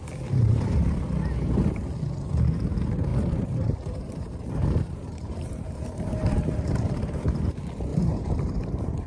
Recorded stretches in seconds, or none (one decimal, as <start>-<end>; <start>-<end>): 0.0-3.1; 7.5-7.9